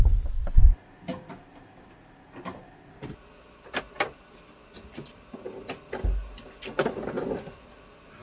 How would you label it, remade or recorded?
recorded